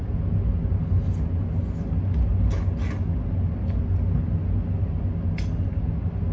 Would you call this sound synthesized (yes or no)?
no